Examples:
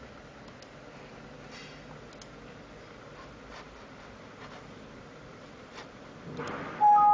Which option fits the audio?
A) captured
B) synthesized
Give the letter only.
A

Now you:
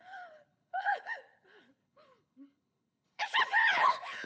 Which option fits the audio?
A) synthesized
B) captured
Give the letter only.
A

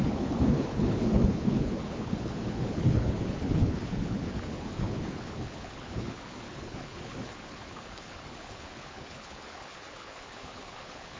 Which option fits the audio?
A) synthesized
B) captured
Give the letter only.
A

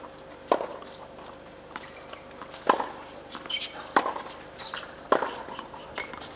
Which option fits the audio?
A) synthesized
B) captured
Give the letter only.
B